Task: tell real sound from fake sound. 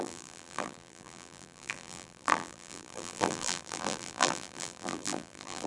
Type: fake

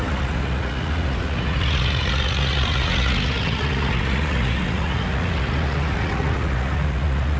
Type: fake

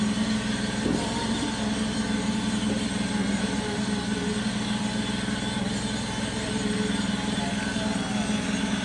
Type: real